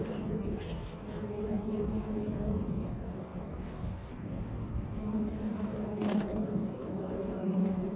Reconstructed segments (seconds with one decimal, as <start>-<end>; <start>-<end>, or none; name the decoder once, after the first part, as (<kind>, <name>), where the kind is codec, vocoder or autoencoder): 0.0-8.0 (codec, DAC)